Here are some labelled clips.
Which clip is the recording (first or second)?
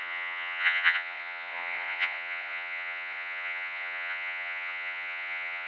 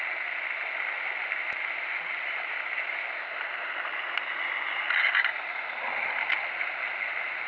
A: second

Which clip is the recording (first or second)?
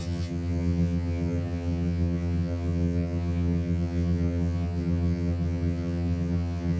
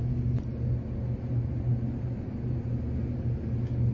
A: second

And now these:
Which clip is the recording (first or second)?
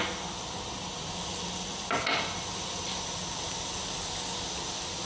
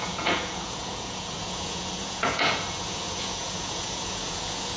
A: first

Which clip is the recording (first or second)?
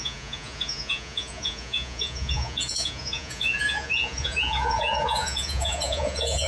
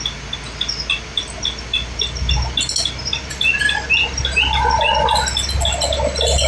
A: second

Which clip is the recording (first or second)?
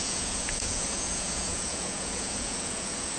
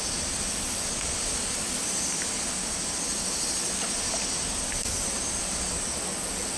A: second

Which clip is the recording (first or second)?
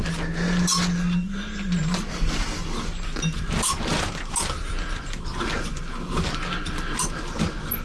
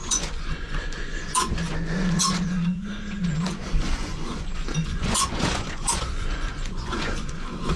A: first